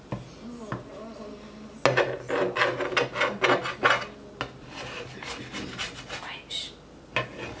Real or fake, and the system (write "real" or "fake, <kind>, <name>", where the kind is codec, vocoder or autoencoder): real